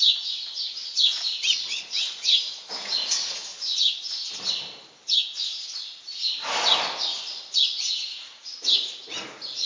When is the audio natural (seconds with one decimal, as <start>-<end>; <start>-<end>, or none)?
3.5-7.2